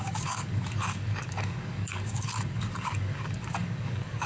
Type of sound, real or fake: fake